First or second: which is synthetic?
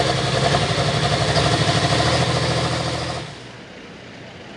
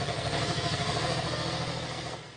second